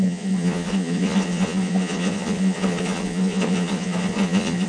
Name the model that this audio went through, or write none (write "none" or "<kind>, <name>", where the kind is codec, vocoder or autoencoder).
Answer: vocoder, Vocos